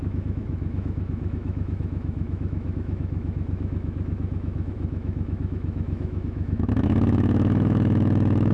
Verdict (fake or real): fake